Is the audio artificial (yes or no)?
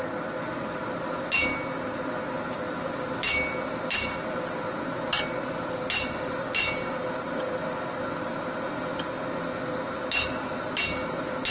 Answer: no